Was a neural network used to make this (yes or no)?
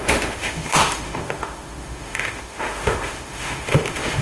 yes